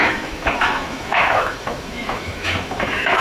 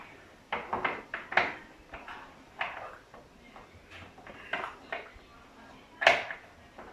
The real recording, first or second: second